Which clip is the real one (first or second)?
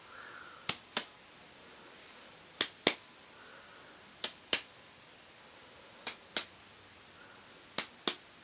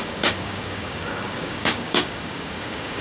first